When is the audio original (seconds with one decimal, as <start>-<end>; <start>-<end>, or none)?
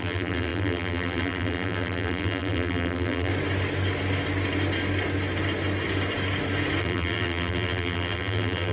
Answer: 3.3-6.8